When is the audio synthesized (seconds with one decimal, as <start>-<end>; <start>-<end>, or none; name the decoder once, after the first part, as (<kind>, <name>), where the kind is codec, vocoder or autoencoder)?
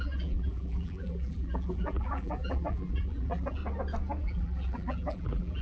0.0-3.6 (vocoder, BigVGAN v2); 4.2-5.6